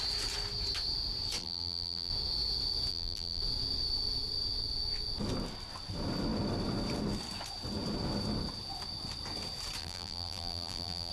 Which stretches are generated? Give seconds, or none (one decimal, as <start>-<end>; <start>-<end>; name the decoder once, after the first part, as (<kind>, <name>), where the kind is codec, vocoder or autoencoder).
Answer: 1.4-2.1 (vocoder, BigVGAN v2); 2.9-3.4; 9.8-11.1